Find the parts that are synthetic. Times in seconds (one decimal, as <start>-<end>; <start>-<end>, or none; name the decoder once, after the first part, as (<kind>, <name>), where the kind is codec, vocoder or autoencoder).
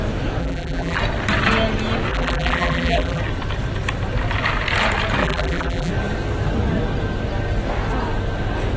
0.4-1.0 (vocoder, BigVGAN v2); 2.1-3.2; 5.2-5.9